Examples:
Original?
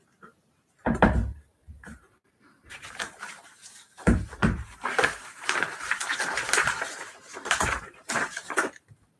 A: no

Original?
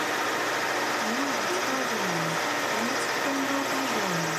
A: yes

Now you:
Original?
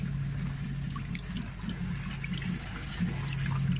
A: yes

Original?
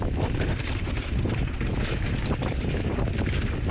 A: no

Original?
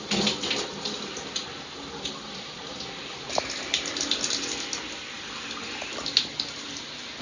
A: yes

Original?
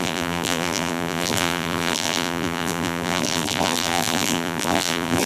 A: no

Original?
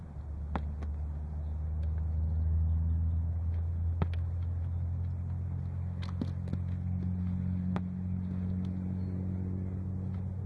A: yes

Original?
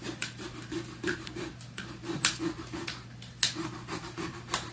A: yes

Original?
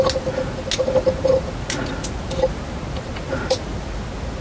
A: yes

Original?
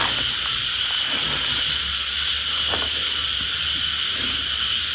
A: yes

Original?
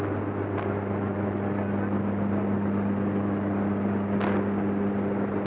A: yes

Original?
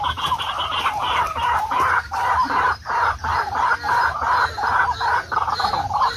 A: no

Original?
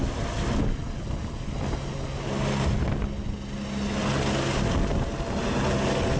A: yes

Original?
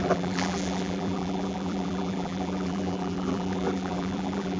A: no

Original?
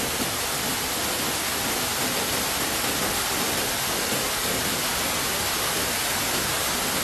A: yes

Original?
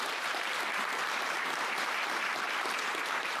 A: no